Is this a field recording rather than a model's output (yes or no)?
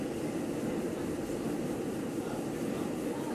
no